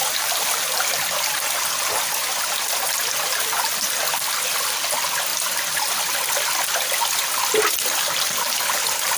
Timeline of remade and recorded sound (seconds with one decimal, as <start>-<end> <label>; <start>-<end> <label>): 0.0-9.2 recorded